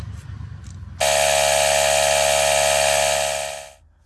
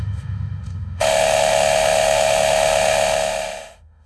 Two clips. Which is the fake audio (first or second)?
second